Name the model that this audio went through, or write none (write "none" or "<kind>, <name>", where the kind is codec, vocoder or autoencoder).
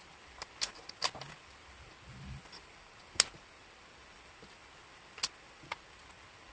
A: none